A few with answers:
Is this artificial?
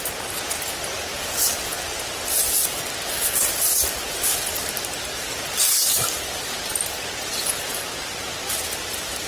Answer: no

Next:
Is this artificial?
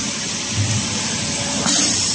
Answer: yes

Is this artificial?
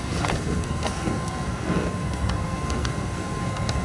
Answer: yes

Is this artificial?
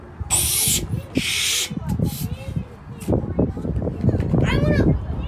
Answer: no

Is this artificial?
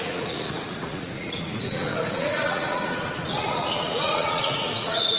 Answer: yes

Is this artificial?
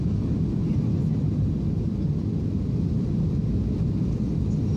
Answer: no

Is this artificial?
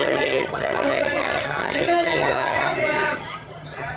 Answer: yes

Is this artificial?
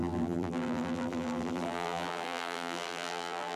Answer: yes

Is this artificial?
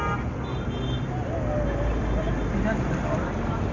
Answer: no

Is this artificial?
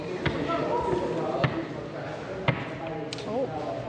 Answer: no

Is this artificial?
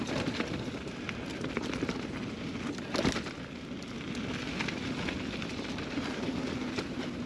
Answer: no